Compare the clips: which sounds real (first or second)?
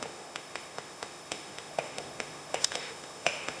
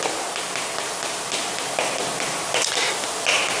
second